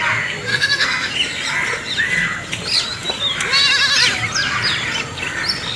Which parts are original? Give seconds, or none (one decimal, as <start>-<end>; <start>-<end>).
0.0-0.5; 1.1-5.8